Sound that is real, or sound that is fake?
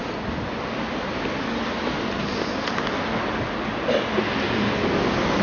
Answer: real